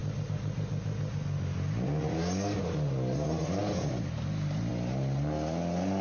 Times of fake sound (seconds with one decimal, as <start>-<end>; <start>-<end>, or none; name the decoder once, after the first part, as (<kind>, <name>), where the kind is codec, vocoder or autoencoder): none